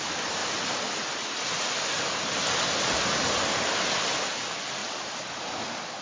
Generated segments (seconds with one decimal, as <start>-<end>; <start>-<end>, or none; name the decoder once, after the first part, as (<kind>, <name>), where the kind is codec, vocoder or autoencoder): none